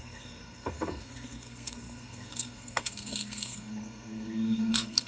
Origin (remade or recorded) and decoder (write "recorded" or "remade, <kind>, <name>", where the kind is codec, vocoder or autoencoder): remade, codec, SNAC